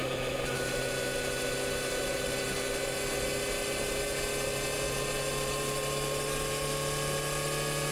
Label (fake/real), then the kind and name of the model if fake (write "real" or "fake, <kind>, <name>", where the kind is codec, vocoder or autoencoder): real